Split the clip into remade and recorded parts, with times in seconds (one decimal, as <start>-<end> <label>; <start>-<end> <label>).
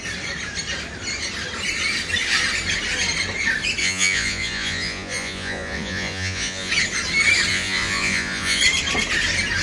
0.0-3.8 recorded; 3.8-6.7 remade; 6.7-7.5 recorded; 7.5-8.6 remade; 8.6-9.6 recorded